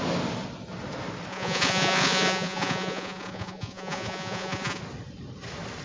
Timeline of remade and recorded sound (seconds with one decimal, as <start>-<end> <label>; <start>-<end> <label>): 0.0-1.3 recorded; 1.3-4.8 remade; 4.8-5.8 recorded